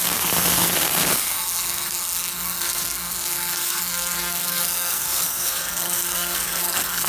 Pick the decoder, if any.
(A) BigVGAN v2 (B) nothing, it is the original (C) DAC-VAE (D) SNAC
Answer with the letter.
D